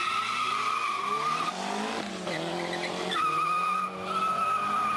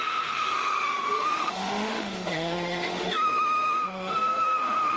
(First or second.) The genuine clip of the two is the first